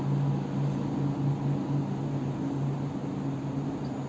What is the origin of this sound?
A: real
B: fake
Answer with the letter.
A